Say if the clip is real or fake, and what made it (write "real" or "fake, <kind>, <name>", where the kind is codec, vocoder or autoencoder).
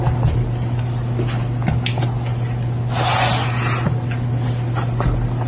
real